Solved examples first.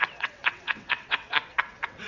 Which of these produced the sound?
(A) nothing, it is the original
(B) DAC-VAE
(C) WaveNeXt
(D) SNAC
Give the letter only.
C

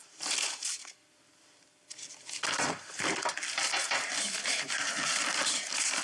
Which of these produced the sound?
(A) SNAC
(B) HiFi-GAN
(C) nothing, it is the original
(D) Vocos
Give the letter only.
C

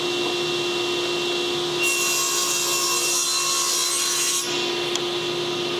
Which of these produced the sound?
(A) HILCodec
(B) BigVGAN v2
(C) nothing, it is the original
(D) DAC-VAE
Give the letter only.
C